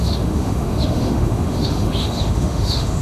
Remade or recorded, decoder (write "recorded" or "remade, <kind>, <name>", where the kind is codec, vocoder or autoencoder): remade, autoencoder, DAC-VAE